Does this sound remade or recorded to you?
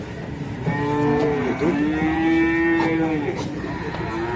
remade